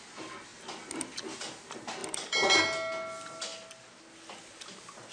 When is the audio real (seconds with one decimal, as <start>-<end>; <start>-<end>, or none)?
0.0-5.1